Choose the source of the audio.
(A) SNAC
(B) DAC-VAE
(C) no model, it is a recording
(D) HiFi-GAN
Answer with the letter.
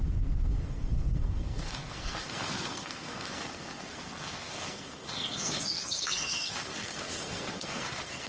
A